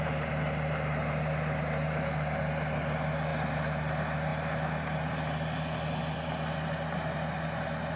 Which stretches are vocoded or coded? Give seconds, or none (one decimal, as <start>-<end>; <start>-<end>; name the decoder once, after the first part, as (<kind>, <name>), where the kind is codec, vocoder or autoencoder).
none